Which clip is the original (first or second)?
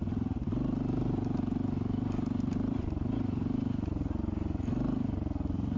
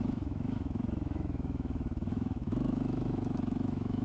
first